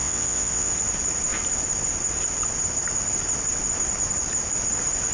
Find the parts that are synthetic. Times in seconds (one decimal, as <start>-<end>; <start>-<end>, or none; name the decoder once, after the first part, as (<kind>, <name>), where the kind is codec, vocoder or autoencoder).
0.0-0.7 (vocoder, WaveNeXt)